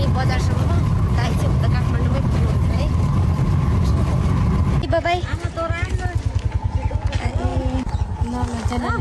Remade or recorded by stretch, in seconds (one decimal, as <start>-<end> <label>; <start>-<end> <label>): 0.0-9.0 recorded